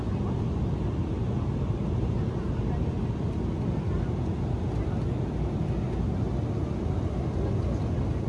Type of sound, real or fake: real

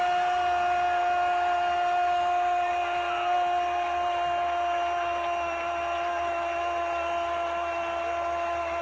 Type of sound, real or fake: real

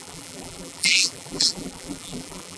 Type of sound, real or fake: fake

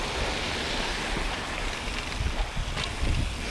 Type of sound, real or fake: real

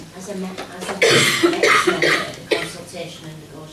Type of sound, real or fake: real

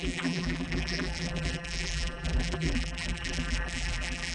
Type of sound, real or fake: fake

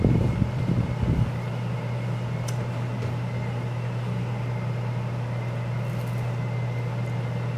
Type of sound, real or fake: real